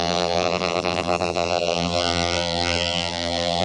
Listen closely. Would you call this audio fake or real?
fake